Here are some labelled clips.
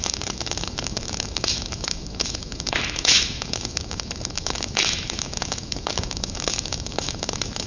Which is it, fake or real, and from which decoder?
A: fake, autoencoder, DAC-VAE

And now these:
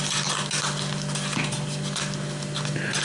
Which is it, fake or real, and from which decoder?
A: real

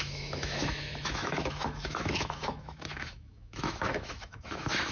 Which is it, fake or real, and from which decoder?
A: fake, autoencoder, DAC-VAE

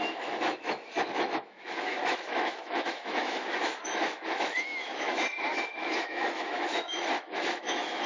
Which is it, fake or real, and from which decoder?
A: fake, autoencoder, DAC-VAE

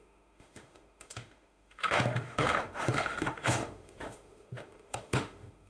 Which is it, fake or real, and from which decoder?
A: fake, autoencoder, DAC-VAE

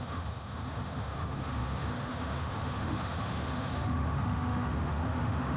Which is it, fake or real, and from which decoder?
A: fake, autoencoder, DAC-VAE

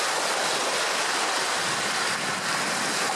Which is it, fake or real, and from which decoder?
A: real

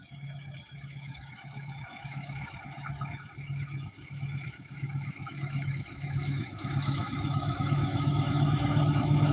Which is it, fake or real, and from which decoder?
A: fake, autoencoder, DAC-VAE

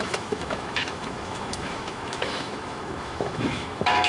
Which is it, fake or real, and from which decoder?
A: fake, autoencoder, DAC-VAE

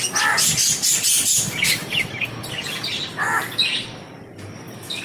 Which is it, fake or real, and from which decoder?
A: real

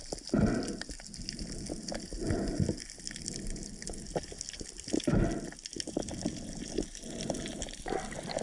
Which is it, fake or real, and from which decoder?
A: real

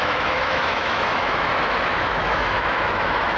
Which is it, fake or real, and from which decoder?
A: fake, autoencoder, DAC-VAE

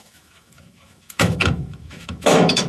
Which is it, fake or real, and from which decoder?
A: fake, autoencoder, DAC-VAE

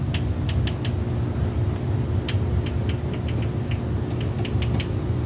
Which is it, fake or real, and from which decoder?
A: real